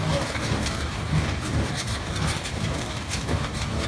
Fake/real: fake